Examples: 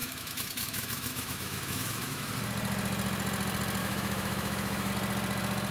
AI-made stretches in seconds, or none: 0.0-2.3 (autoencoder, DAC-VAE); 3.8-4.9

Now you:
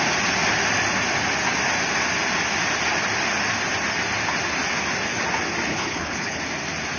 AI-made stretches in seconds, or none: 5.7-6.4 (codec, HILCodec)

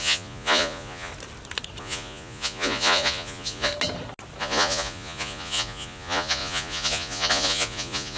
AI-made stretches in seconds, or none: 0.0-1.1 (vocoder, Vocos); 1.8-3.7; 4.4-8.2

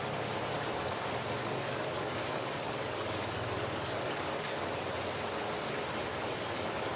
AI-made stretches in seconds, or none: 1.4-4.8 (codec, DAC); 6.1-7.0

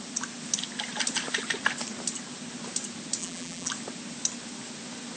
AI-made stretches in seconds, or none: 3.2-3.7 (vocoder, BigVGAN v2)